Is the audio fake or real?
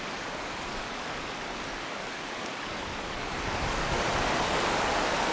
fake